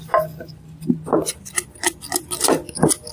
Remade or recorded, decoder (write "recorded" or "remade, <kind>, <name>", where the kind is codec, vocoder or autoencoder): recorded